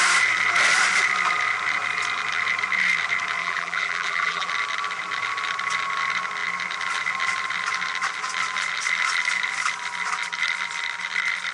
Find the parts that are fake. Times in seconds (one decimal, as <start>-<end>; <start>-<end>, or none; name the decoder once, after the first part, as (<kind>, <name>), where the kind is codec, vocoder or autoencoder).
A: 3.4-4.5 (vocoder, BigVGAN v2)